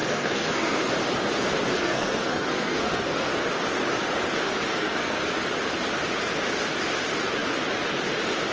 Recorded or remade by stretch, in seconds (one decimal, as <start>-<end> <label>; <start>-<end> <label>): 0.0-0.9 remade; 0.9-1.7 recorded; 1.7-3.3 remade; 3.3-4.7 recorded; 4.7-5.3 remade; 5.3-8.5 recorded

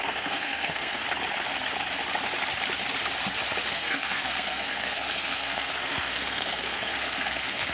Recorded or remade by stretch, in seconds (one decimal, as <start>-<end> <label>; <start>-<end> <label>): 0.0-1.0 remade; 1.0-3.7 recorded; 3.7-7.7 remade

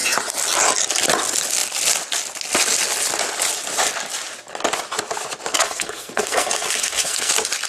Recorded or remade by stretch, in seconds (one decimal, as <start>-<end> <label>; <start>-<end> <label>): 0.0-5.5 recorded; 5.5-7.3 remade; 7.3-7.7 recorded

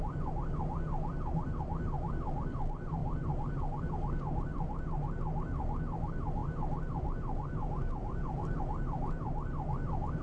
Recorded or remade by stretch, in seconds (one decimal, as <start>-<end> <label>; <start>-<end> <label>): 0.0-10.2 recorded